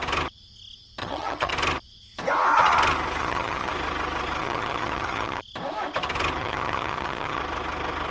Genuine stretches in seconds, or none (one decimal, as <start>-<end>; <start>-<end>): 0.0-1.0; 1.5-3.2; 3.7-4.4; 5.4-6.4; 7.4-8.1